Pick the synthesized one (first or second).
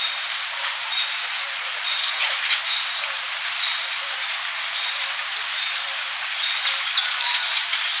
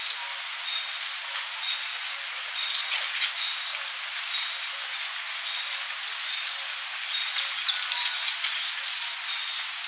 first